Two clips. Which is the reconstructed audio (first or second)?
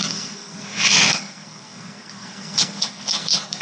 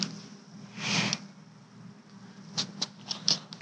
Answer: first